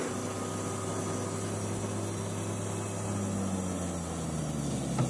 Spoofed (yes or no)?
no